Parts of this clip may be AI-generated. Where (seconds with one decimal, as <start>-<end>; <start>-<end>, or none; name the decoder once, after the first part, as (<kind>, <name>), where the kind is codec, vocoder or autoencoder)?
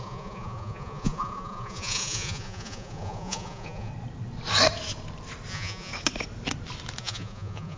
0.0-3.9 (vocoder, Vocos); 5.5-5.9; 7.0-7.8